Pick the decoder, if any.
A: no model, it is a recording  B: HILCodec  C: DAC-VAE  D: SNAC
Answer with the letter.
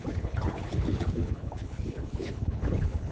B